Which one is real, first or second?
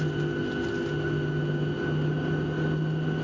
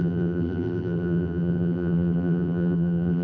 first